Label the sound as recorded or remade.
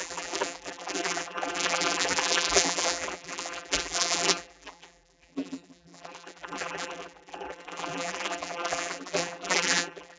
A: remade